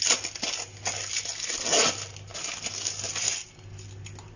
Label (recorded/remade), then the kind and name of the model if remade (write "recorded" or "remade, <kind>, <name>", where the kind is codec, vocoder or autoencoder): recorded